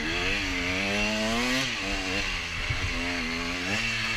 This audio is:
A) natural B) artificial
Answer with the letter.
A